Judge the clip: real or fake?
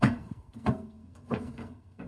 fake